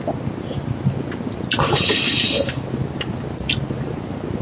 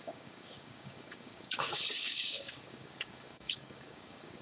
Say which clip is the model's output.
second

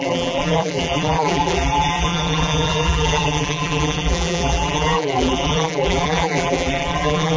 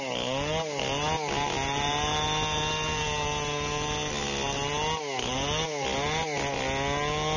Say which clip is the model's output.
first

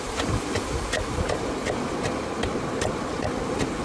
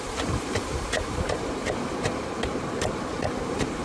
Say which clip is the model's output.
second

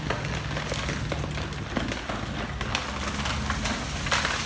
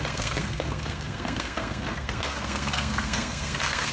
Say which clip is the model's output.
second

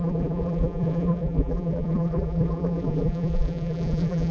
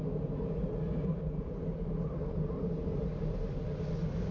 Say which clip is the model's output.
first